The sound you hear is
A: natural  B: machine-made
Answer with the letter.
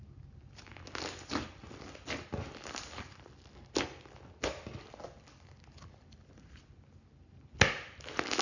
A